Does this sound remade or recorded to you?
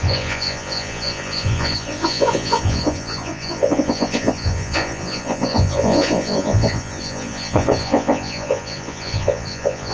remade